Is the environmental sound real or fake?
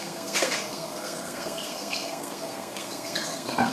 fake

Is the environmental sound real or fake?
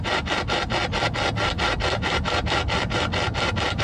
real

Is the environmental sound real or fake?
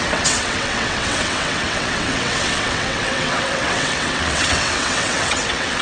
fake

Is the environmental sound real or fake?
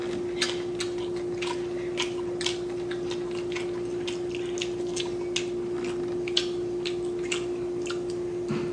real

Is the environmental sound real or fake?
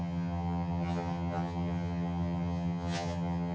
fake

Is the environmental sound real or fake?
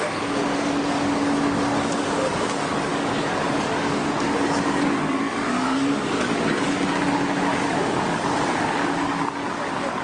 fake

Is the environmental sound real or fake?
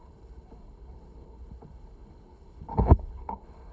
fake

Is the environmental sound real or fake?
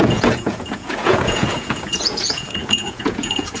fake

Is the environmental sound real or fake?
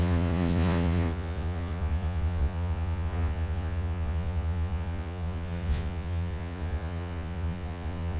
fake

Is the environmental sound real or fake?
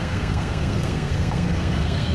fake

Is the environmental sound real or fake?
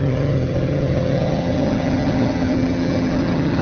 fake